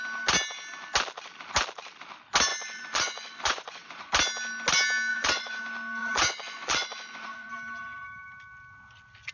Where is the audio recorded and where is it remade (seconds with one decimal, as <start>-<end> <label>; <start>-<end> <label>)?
0.0-2.5 recorded; 2.5-4.1 remade; 4.1-5.1 recorded; 5.1-5.6 remade; 5.6-6.0 recorded; 6.0-7.5 remade; 7.5-9.3 recorded